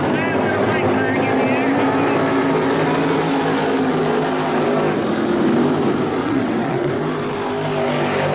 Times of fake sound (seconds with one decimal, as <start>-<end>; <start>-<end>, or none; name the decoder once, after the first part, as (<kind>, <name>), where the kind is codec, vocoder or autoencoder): 6.2-6.9 (vocoder, WaveNeXt)